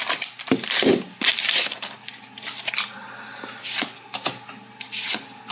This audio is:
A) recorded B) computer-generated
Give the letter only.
A